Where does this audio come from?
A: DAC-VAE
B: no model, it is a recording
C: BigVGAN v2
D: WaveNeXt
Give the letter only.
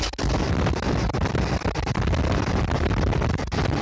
B